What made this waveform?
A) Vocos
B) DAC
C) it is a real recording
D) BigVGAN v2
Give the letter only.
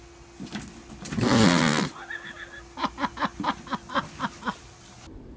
C